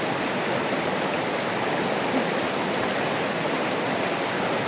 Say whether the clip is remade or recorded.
recorded